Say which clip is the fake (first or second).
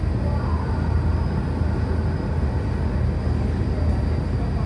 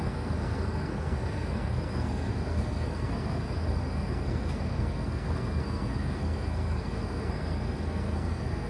second